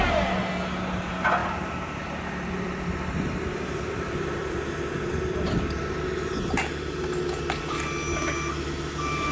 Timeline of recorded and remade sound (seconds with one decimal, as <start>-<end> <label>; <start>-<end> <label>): 0.0-1.4 recorded; 1.4-5.1 remade; 5.1-9.3 recorded